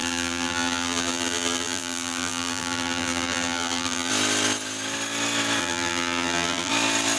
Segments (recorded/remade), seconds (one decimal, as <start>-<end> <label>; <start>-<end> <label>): 0.0-4.1 remade; 4.1-5.6 recorded; 5.6-6.7 remade; 6.7-7.2 recorded